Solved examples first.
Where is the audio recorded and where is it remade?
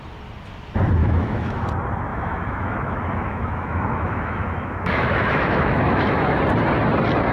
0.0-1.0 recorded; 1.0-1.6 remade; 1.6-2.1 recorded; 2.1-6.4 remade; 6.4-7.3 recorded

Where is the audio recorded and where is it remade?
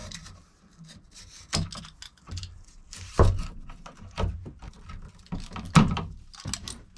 0.0-7.0 recorded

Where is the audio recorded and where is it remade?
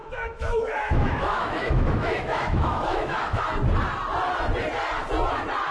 0.0-3.4 remade; 3.4-5.7 recorded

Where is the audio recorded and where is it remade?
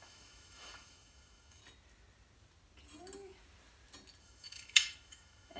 0.0-1.6 remade; 1.6-4.2 recorded; 4.2-5.6 remade